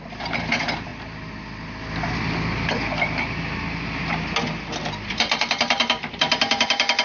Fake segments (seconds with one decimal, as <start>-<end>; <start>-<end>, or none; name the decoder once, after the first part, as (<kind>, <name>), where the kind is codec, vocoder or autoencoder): 0.0-0.9 (vocoder, BigVGAN v2); 5.1-7.0

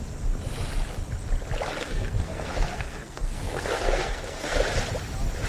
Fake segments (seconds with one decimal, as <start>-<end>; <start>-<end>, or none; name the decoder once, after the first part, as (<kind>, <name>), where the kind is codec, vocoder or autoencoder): 1.8-4.6 (codec, SNAC)